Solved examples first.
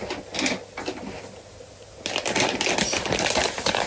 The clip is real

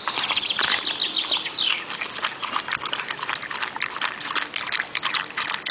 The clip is real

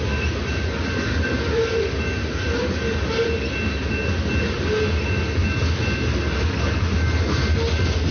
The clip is real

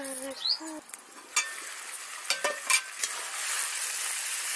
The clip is real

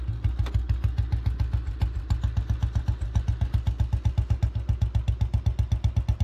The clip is real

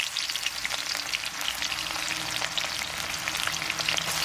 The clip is real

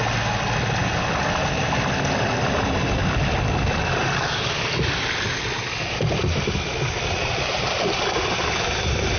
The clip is real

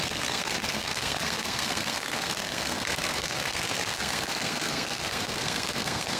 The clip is fake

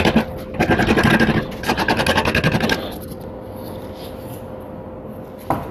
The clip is real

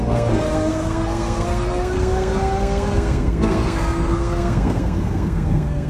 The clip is fake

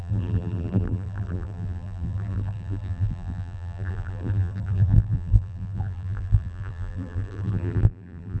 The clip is fake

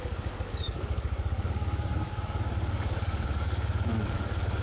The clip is fake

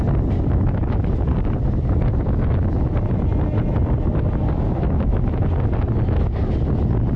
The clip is real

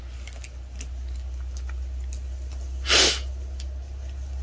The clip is real